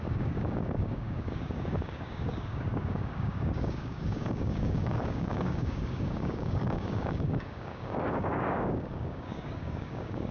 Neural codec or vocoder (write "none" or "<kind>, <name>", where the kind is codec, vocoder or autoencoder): codec, DAC